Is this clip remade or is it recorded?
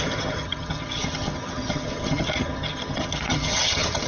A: remade